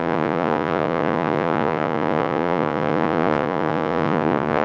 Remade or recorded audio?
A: remade